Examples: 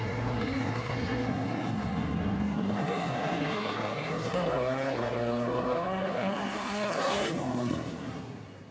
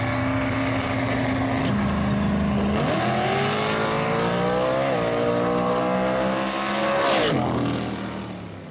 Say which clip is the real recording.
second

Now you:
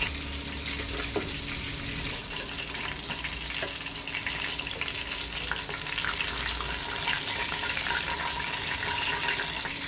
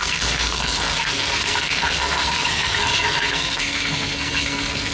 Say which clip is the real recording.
first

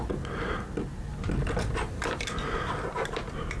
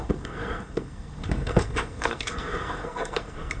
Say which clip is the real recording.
first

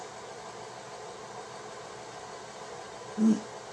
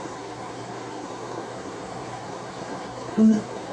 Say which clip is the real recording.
first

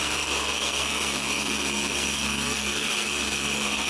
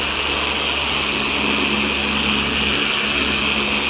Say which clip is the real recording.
second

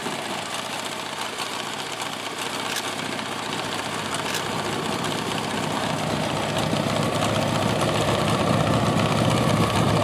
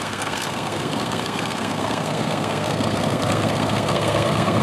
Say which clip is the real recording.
first